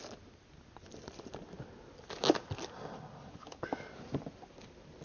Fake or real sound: real